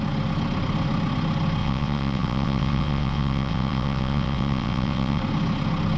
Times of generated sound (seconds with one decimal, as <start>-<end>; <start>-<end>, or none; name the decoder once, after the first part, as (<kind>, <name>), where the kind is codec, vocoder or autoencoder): 1.6-5.2 (vocoder, WaveNeXt)